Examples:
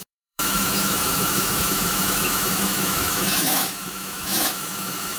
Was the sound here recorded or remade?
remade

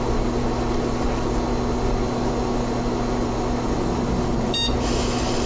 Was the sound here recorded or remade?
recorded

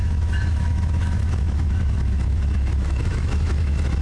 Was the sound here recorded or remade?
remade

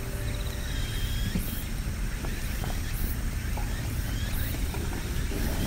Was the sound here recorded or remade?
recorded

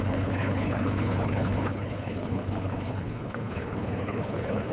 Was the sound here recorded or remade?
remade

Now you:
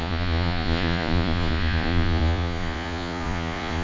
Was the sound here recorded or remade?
remade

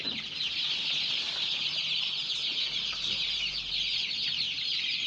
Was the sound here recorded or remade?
recorded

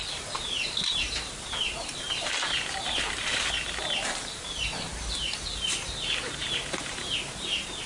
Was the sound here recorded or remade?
remade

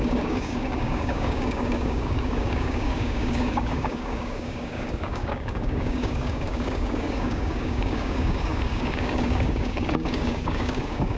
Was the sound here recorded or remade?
remade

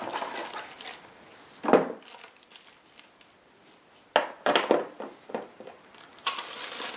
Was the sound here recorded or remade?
recorded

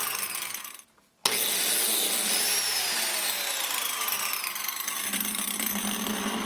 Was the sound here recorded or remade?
recorded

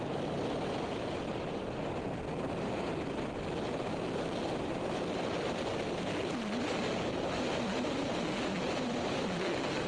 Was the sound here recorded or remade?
recorded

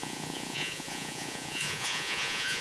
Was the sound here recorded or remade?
remade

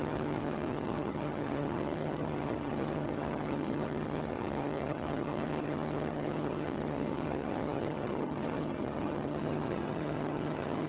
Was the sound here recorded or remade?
remade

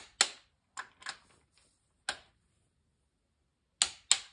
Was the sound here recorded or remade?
recorded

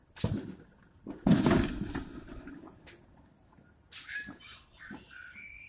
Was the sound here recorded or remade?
recorded